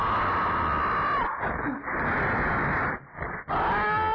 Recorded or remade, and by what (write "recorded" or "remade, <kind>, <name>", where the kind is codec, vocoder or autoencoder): recorded